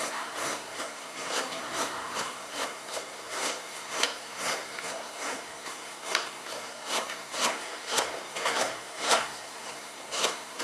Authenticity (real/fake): fake